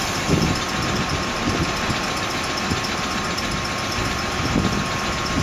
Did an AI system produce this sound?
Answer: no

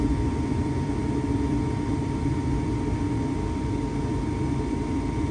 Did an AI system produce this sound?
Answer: no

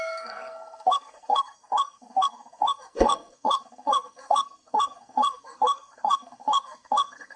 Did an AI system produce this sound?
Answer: yes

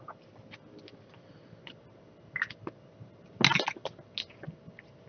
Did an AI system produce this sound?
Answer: no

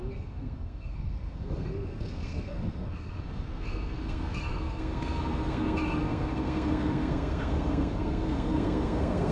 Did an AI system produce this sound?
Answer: yes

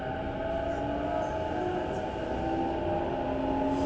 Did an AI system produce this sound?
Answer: no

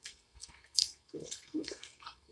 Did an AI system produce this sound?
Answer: yes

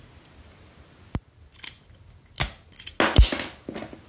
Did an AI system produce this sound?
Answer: no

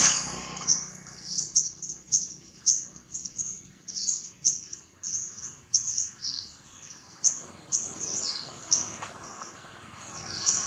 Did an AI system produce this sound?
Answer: yes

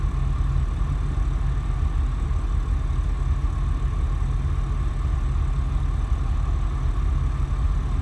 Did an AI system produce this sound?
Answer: no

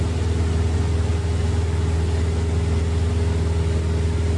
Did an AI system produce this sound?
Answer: no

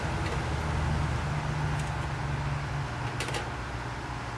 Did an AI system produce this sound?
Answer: no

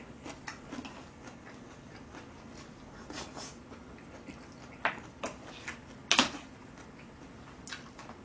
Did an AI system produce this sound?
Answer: no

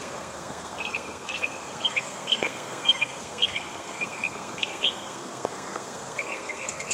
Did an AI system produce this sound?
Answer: yes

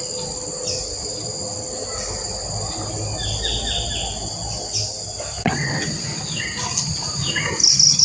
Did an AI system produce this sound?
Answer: no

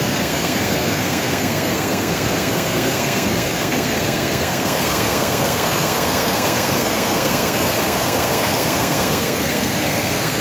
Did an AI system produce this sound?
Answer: yes